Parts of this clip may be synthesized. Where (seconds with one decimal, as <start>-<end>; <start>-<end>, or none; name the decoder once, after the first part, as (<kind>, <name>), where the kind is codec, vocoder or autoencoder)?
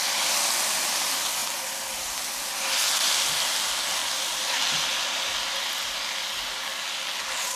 none